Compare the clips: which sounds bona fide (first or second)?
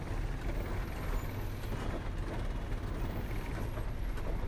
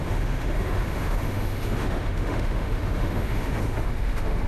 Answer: first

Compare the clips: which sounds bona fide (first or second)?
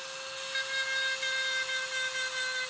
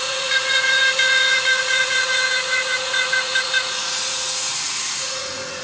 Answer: first